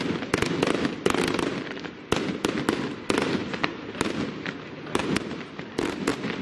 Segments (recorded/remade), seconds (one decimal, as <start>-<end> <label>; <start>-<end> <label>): 0.0-1.5 recorded; 1.5-2.0 remade; 2.0-3.4 recorded; 3.4-4.0 remade; 4.0-5.0 recorded; 5.0-5.7 remade; 5.7-6.4 recorded